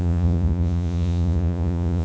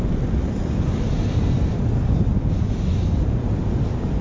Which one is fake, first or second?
first